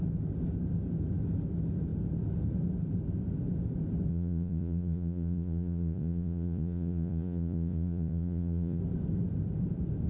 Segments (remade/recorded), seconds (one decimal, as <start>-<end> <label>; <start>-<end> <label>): 0.0-4.1 recorded; 4.1-8.8 remade; 8.8-10.1 recorded